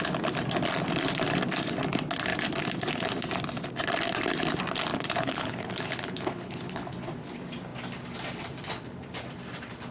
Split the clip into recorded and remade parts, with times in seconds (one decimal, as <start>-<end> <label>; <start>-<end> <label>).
0.0-4.9 recorded; 4.9-7.1 remade; 7.1-9.9 recorded